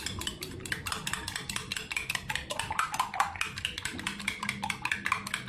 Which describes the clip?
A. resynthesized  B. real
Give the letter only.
B